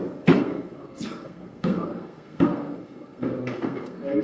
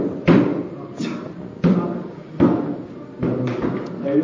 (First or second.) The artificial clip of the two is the first